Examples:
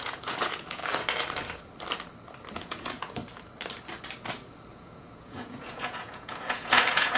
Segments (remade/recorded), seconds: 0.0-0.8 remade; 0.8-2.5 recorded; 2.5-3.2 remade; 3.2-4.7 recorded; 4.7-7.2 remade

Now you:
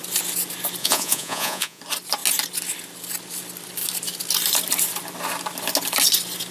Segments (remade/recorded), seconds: 0.0-0.8 recorded; 0.8-1.8 remade; 1.8-6.5 recorded